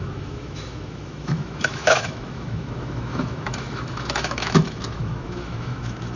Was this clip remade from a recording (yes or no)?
yes